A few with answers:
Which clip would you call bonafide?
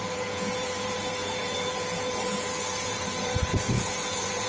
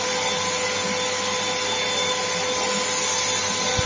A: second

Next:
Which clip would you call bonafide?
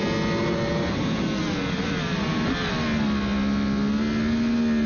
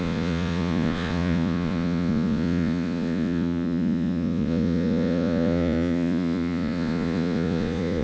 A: first